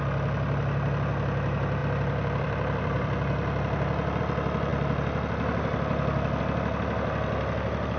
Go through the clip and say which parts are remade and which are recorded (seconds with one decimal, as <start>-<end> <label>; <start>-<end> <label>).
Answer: 0.0-1.8 recorded; 1.8-4.2 remade; 4.2-4.7 recorded; 4.7-6.4 remade; 6.4-8.0 recorded